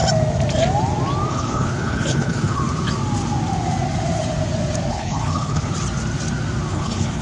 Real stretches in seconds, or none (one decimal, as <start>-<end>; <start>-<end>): 0.0-1.3; 2.6-4.9; 5.7-6.7